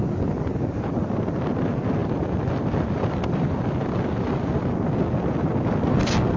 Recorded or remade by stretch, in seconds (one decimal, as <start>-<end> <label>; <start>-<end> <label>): 0.0-2.0 recorded; 2.0-4.5 remade; 4.5-6.4 recorded